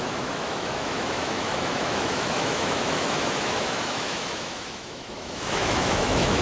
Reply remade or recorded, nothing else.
remade